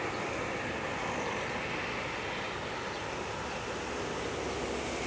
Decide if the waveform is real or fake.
real